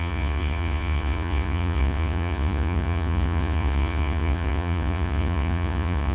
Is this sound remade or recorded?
remade